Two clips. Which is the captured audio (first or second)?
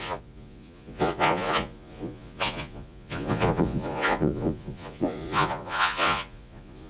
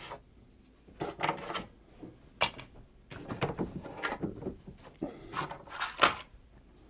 second